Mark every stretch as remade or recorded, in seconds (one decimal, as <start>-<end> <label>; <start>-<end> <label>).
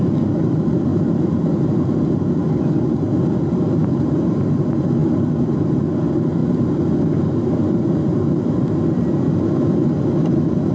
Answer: 0.0-0.9 recorded; 0.9-1.5 remade; 1.5-3.8 recorded; 3.8-4.6 remade; 4.6-10.7 recorded